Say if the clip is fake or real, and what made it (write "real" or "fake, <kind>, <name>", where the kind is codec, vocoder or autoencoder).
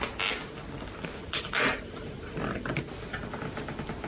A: real